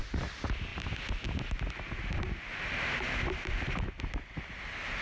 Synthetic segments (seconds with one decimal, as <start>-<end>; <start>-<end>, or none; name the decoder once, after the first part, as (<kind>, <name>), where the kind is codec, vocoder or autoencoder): none